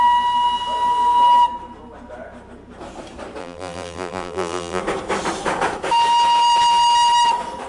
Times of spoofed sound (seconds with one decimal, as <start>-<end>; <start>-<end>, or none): 3.4-4.8